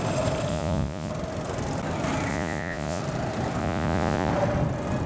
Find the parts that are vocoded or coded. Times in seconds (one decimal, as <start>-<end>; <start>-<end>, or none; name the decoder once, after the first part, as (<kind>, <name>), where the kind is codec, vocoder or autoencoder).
0.5-1.1 (vocoder, Vocos); 2.3-3.0; 3.6-4.3